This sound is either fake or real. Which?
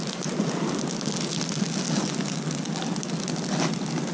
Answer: real